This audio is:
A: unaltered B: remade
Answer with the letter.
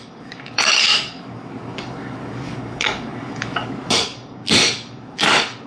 B